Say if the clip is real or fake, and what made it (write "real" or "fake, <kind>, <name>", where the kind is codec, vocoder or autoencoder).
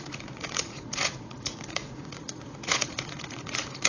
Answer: fake, vocoder, Vocos